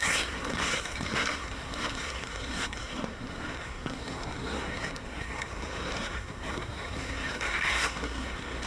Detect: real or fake fake